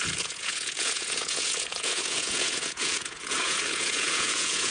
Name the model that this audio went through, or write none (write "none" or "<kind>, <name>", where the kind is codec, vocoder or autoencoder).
vocoder, Vocos